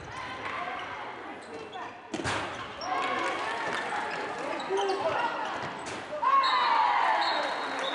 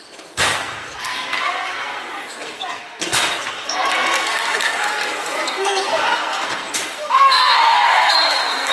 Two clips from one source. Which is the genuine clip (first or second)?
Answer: first